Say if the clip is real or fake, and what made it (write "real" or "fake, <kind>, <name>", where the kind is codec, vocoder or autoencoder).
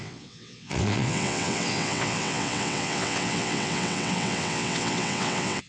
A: fake, vocoder, WaveNeXt